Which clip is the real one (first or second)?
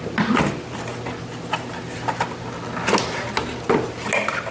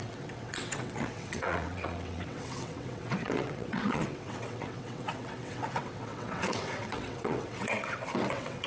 first